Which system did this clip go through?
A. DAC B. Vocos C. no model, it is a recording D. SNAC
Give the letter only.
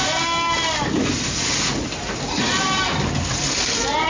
C